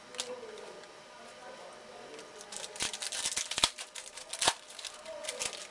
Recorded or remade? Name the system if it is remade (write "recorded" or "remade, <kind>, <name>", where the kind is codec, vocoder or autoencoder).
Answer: recorded